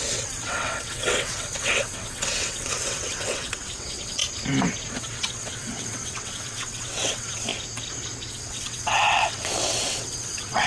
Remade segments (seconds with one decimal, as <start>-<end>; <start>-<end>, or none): 0.0-4.2; 4.9-7.5; 8.3-10.7